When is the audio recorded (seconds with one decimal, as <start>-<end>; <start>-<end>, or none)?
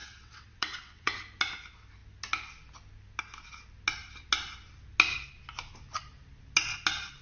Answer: 1.1-7.2